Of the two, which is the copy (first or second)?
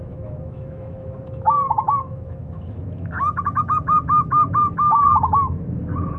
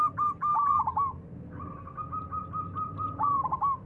first